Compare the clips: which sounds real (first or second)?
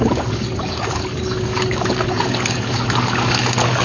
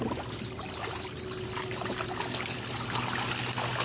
second